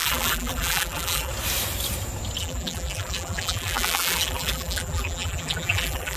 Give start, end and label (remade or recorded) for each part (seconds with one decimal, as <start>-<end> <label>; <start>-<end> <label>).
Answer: 0.0-1.3 remade; 1.3-2.4 recorded; 2.4-6.2 remade